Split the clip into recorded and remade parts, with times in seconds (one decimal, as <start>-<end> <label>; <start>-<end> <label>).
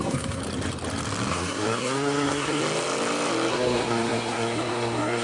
0.0-0.4 remade; 0.4-1.3 recorded; 1.3-2.6 remade; 2.6-3.5 recorded; 3.5-5.2 remade